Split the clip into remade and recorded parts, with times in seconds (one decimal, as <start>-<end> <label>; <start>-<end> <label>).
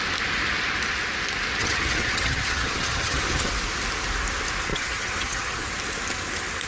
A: 0.0-1.6 recorded; 1.6-3.5 remade; 3.5-4.7 recorded; 4.7-5.7 remade; 5.7-6.7 recorded